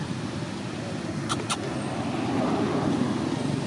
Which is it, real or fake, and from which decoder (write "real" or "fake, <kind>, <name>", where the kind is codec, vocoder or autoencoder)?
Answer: real